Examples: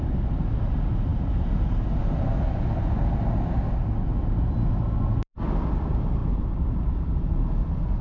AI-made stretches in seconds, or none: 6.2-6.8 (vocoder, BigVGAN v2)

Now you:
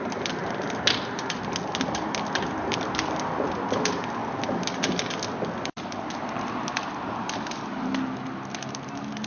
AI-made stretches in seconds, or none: none

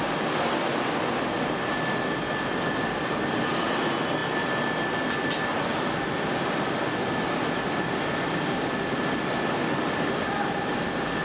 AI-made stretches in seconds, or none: none

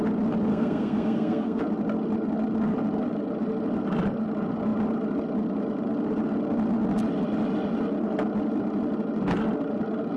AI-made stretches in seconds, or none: 0.5-1.6 (codec, SNAC)